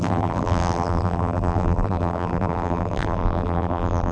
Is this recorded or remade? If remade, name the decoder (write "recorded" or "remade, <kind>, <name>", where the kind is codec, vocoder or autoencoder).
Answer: remade, vocoder, BigVGAN v2